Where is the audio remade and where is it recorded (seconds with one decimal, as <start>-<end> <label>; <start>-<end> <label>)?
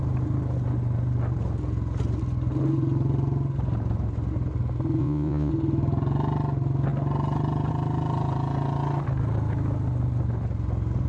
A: 0.0-5.0 recorded; 5.0-5.5 remade; 5.5-11.1 recorded